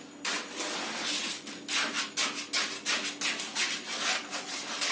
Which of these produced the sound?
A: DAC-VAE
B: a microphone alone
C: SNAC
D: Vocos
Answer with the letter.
B